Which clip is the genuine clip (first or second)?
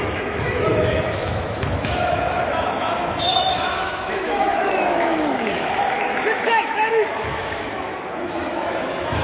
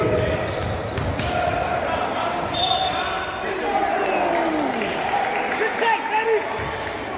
second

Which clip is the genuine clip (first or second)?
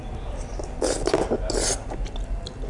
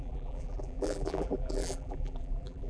first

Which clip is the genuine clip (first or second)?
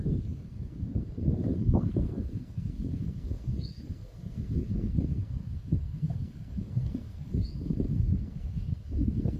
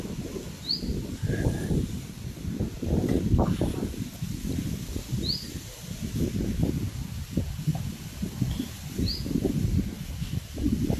second